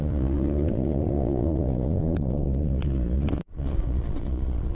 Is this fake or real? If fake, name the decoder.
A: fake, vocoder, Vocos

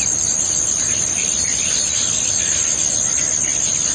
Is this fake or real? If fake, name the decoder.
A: real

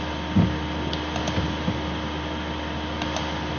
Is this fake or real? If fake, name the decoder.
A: real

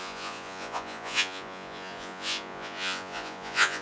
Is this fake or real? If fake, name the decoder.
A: fake, vocoder, Vocos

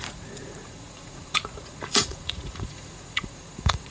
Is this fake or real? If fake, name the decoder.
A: fake, vocoder, Vocos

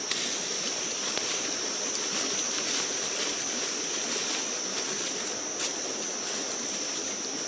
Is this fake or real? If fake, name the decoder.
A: real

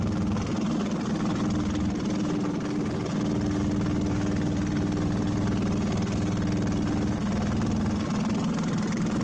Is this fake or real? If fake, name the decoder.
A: real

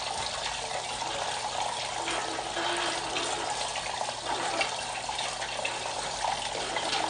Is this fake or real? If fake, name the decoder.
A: real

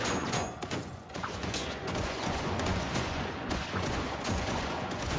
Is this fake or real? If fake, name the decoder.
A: fake, vocoder, Vocos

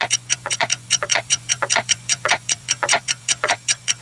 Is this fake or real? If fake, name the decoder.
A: fake, vocoder, Vocos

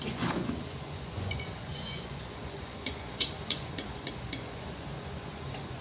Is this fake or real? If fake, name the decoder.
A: fake, vocoder, Vocos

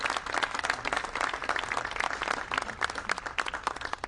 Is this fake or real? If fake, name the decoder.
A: real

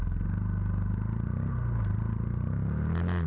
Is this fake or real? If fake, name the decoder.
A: real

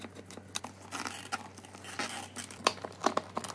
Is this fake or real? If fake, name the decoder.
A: real